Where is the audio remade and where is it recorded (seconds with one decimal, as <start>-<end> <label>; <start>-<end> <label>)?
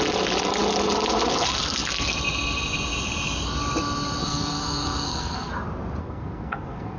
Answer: 0.0-4.2 recorded; 4.2-5.5 remade; 5.5-6.0 recorded; 6.0-7.0 remade